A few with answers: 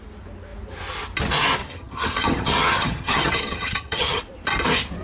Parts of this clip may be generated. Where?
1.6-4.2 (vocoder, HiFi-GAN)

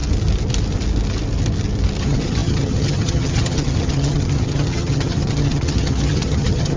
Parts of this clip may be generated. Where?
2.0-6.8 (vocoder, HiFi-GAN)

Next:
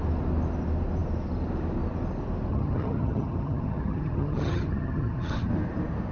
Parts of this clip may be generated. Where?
2.5-5.5 (vocoder, HiFi-GAN)

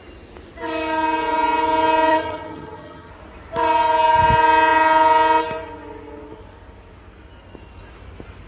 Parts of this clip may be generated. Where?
2.1-3.1 (vocoder, HiFi-GAN)

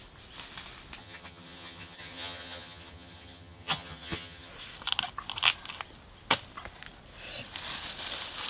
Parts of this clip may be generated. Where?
1.0-4.5 (vocoder, HiFi-GAN)

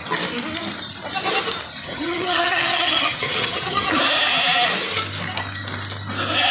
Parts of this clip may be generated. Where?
1.8-4.0 (vocoder, HiFi-GAN)